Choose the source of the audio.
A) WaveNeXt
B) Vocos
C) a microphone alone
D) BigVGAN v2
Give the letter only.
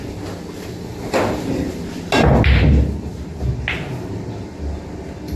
C